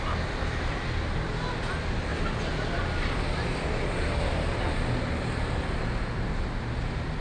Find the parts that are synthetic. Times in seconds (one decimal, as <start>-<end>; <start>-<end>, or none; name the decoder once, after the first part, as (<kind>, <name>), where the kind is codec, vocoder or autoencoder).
none